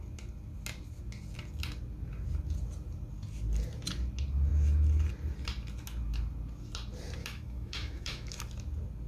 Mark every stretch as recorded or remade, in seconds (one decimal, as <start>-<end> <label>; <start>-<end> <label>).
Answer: 0.0-7.2 recorded; 7.2-8.4 remade; 8.4-9.1 recorded